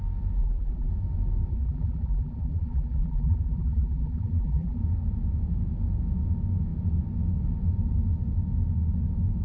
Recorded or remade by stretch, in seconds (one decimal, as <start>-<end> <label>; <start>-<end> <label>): 0.0-0.4 recorded; 0.4-0.9 remade; 0.9-1.5 recorded; 1.5-4.8 remade; 4.8-9.4 recorded